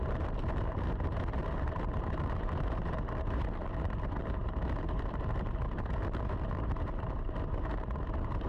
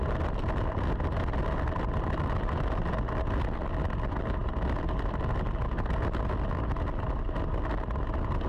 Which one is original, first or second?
second